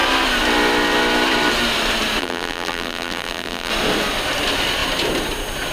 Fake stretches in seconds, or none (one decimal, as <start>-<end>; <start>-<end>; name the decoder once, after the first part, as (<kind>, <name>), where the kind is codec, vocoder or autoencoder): 2.2-3.7 (vocoder, BigVGAN v2)

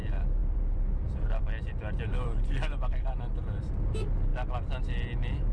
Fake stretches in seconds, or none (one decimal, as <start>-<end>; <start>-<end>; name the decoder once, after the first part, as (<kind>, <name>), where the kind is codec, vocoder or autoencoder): 0.4-3.7 (vocoder, BigVGAN v2); 4.3-4.8

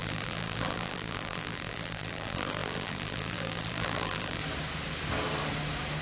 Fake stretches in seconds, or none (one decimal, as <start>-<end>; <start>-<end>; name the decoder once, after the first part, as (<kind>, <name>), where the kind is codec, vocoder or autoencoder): 0.0-4.4 (vocoder, BigVGAN v2)

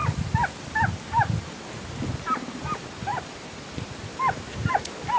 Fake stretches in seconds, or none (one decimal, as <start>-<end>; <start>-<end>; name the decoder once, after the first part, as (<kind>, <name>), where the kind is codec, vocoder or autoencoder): none

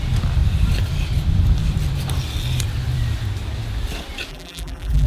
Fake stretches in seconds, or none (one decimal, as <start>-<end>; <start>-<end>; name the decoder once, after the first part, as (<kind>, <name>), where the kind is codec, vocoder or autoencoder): 4.3-5.1 (vocoder, BigVGAN v2)

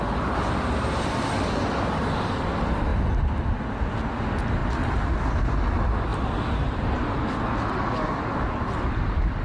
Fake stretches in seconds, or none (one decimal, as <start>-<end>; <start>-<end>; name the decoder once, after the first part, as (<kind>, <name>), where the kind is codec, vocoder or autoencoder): none

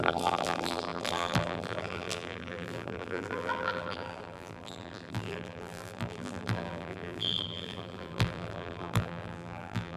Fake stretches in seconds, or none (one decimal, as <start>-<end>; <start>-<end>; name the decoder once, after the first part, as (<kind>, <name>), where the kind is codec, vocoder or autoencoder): 0.0-10.0 (vocoder, BigVGAN v2)

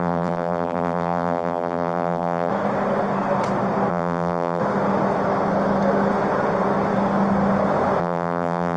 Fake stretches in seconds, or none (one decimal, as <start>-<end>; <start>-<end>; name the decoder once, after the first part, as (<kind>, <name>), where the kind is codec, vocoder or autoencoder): 0.0-2.5 (vocoder, BigVGAN v2); 3.9-4.6; 8.0-8.8